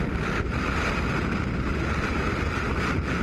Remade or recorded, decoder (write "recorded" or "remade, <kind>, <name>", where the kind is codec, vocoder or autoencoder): recorded